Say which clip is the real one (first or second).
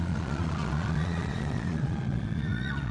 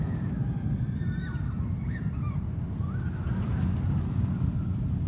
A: second